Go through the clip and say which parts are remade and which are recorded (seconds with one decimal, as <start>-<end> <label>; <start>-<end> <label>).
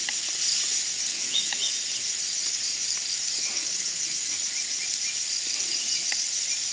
0.0-1.1 recorded; 1.1-1.7 remade; 1.7-3.4 recorded; 3.4-4.4 remade; 4.4-6.7 recorded